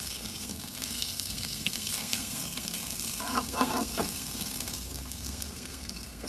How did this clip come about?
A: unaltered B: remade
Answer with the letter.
B